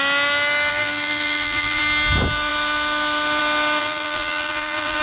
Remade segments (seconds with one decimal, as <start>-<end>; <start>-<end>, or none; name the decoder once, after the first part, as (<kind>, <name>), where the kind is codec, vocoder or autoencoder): 0.7-1.8 (vocoder, BigVGAN v2); 3.8-5.0